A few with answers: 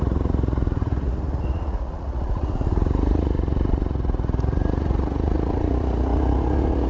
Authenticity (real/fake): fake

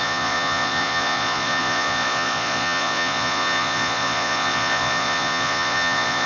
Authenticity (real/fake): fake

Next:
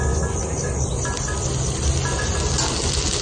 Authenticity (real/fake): real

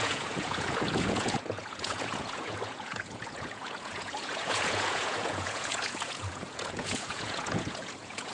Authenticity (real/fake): fake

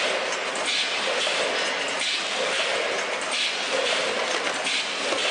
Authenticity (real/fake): real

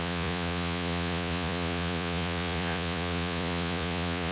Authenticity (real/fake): fake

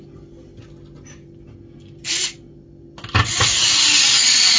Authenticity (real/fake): real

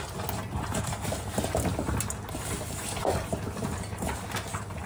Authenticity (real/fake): real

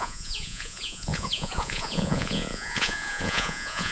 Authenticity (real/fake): fake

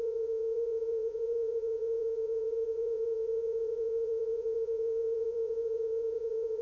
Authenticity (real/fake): fake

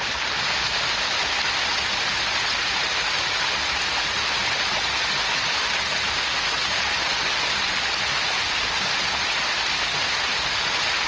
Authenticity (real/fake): real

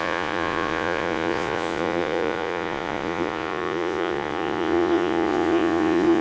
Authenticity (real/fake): fake